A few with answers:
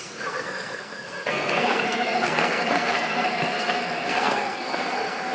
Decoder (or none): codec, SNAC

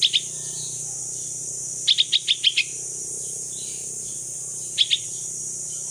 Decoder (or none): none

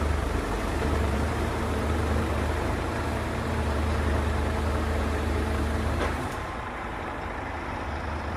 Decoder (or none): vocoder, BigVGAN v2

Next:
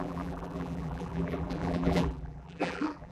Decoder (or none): vocoder, BigVGAN v2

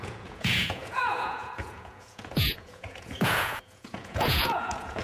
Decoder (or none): vocoder, Vocos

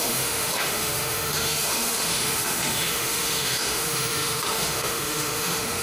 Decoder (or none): autoencoder, DAC-VAE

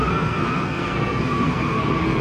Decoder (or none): codec, SNAC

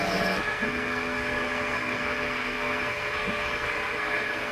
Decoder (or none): codec, SNAC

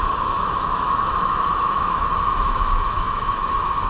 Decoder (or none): autoencoder, DAC-VAE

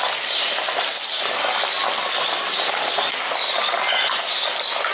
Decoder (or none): none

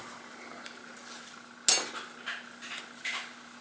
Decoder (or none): none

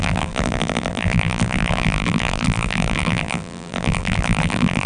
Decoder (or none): vocoder, BigVGAN v2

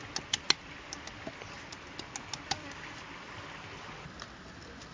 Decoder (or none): none